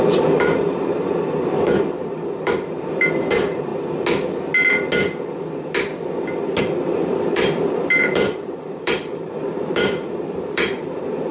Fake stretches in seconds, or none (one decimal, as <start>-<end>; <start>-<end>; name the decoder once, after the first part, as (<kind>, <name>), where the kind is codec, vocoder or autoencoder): 0.0-3.7 (vocoder, BigVGAN v2); 6.6-11.3